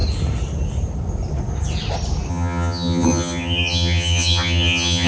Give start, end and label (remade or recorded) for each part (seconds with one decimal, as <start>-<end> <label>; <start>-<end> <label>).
0.0-2.3 recorded; 2.3-5.1 remade